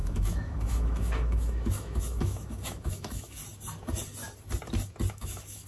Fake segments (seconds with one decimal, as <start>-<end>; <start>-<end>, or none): 0.0-3.4; 5.1-5.7